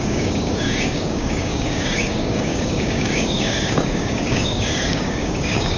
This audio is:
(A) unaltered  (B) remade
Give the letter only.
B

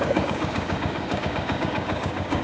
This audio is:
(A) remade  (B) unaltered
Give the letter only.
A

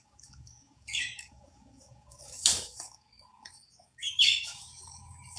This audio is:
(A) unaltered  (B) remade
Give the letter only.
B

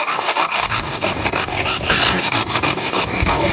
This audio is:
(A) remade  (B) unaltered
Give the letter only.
A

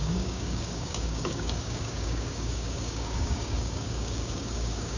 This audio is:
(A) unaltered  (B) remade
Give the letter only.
B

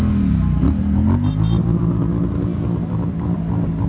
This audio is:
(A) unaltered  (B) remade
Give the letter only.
A